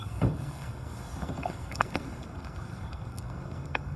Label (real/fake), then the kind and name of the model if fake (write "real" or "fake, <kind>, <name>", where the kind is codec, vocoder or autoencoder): fake, codec, SNAC